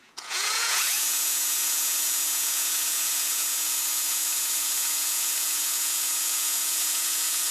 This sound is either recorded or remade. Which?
remade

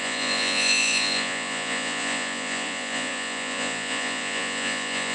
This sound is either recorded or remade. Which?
remade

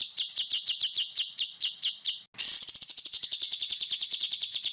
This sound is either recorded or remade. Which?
recorded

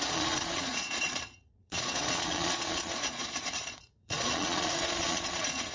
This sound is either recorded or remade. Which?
remade